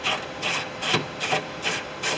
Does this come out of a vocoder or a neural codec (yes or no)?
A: yes